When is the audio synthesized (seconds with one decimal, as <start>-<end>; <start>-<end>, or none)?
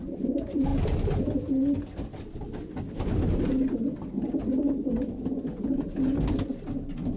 none